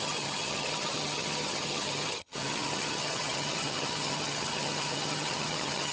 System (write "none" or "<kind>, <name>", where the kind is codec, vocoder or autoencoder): vocoder, HiFi-GAN